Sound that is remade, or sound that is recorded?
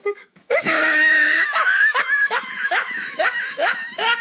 remade